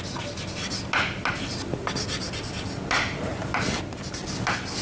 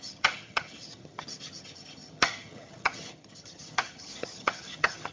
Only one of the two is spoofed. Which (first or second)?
second